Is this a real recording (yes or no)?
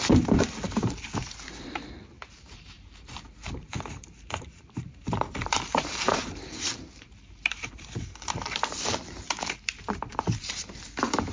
no